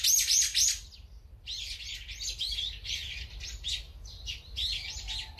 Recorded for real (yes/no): yes